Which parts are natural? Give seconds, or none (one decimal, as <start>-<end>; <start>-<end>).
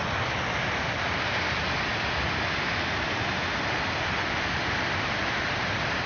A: 0.0-6.1